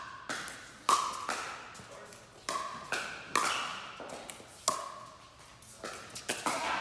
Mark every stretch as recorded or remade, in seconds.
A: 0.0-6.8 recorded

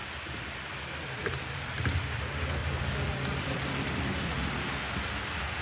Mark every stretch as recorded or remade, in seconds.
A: 0.0-2.0 remade; 2.0-2.6 recorded; 2.6-4.0 remade; 4.0-5.6 recorded

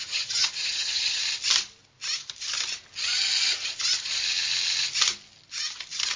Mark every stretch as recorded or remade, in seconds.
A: 0.0-1.2 remade; 1.2-6.2 recorded

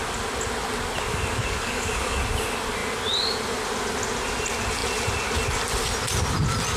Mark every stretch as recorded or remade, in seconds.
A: 0.0-1.1 recorded; 1.1-2.2 remade; 2.2-6.8 recorded

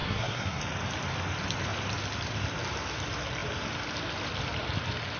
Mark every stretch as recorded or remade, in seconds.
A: 0.0-0.6 remade; 0.6-5.2 recorded

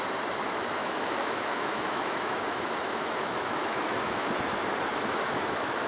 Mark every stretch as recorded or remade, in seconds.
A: 0.0-0.8 recorded; 0.8-4.3 remade; 4.3-4.9 recorded; 4.9-5.9 remade

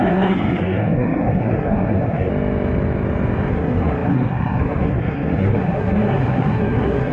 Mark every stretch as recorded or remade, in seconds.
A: 0.0-2.3 remade; 2.3-3.5 recorded; 3.5-7.1 remade